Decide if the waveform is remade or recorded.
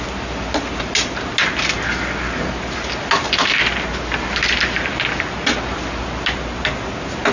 recorded